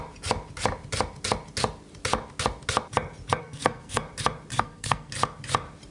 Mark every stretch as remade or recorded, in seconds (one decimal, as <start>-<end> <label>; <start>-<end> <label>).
0.0-3.4 recorded; 3.4-4.0 remade; 4.0-4.5 recorded; 4.5-5.1 remade; 5.1-5.9 recorded